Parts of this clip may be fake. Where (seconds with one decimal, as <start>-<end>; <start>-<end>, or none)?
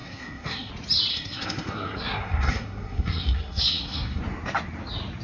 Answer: 0.0-0.7; 1.1-4.2